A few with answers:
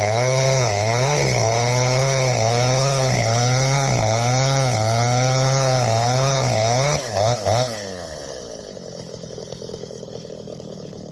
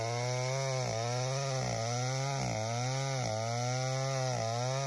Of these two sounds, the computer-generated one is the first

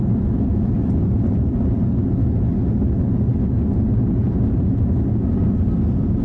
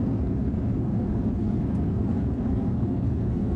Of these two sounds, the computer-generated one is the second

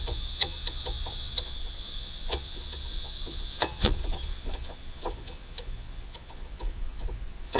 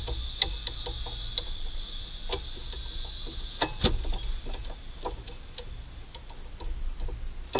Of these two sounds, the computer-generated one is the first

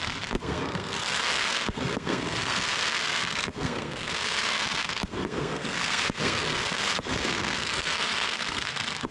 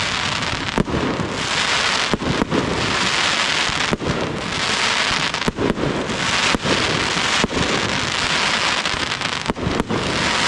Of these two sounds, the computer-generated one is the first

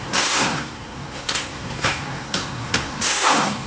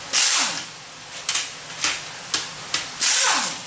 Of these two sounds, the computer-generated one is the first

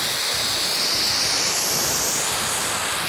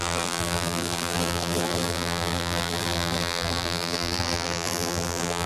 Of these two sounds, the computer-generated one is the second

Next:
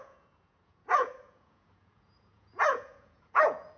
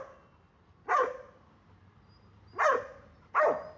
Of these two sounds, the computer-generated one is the first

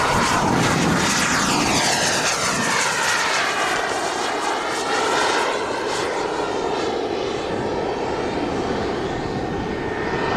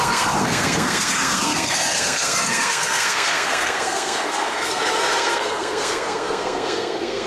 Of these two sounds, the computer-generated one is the second